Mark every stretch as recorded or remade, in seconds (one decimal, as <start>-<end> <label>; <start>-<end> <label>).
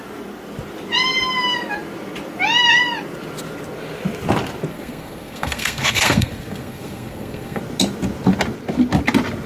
0.0-4.7 recorded; 4.7-7.6 remade; 7.6-9.5 recorded